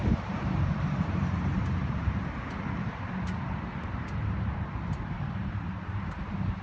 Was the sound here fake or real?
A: fake